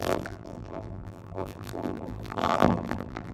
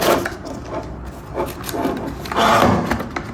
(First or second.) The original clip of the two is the second